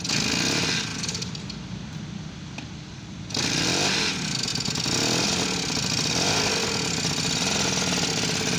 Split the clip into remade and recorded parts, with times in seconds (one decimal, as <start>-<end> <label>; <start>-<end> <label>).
0.0-0.9 recorded; 0.9-3.9 remade; 3.9-8.6 recorded